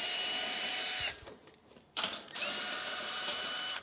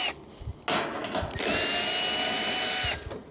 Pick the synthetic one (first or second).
first